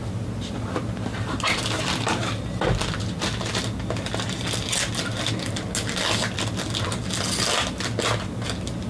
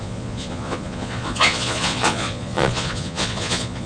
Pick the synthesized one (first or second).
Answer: second